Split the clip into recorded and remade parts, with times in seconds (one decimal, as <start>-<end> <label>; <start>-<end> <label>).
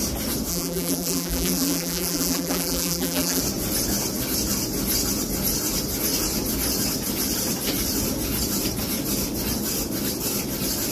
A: 0.0-0.5 recorded; 0.5-3.4 remade; 3.4-10.9 recorded